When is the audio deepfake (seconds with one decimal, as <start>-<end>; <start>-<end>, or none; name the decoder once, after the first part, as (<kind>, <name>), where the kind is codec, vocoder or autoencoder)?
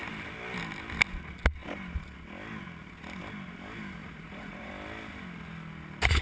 4.0-4.7 (vocoder, Vocos)